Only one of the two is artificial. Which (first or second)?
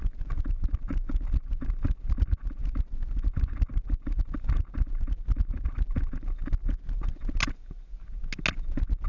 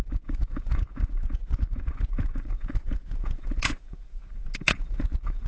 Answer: second